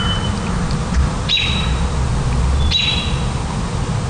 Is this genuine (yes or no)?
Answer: yes